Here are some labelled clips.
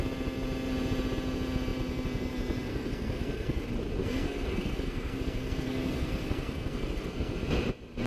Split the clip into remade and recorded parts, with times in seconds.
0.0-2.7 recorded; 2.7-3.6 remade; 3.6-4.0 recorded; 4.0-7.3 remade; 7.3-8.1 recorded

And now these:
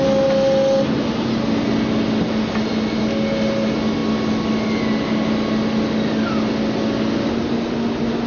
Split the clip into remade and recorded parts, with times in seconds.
0.0-8.3 recorded

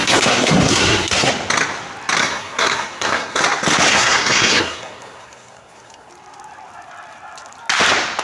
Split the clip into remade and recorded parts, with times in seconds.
0.0-1.3 remade; 1.3-2.2 recorded; 2.2-3.4 remade; 3.4-3.9 recorded; 3.9-6.1 remade; 6.1-8.2 recorded

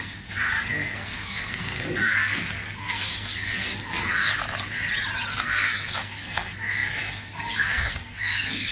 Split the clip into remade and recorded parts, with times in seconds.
0.0-4.3 remade; 4.3-5.3 recorded; 5.3-8.7 remade